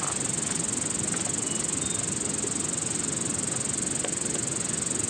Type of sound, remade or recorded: recorded